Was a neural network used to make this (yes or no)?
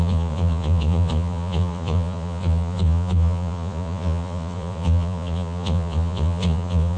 yes